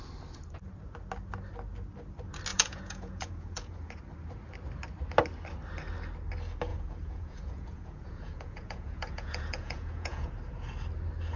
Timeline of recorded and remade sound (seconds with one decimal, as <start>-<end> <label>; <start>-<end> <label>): 0.0-2.5 recorded; 2.5-3.9 remade; 3.9-6.7 recorded; 6.7-10.3 remade; 10.3-11.4 recorded

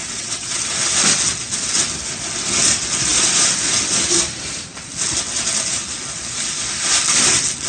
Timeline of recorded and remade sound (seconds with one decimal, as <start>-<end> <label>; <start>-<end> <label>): 0.0-0.7 remade; 0.7-7.7 recorded